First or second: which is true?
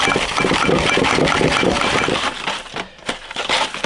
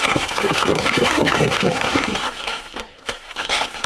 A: first